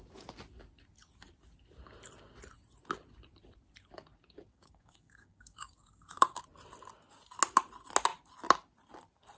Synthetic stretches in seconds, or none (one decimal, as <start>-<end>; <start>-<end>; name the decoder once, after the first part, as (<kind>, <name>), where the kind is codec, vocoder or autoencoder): 4.5-6.4 (codec, DAC)